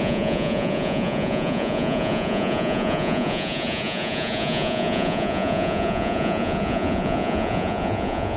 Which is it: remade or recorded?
remade